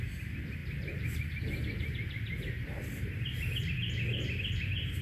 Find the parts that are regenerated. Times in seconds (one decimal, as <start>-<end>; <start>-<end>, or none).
none